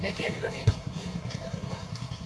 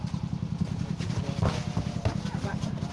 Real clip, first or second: second